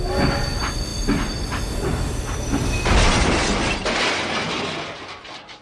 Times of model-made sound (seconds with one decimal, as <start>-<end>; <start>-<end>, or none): none